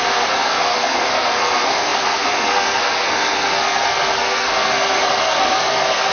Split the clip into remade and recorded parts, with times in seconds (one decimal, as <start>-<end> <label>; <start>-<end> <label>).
0.0-6.1 remade